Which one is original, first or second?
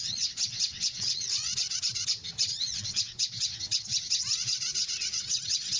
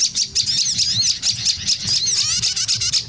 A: second